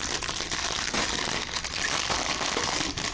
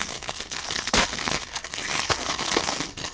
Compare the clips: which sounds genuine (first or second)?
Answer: first